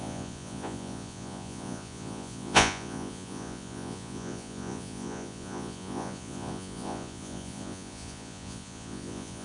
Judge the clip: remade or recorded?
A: remade